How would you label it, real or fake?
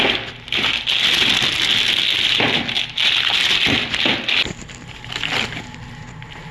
real